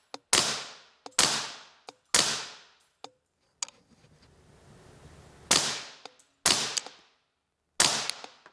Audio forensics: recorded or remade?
recorded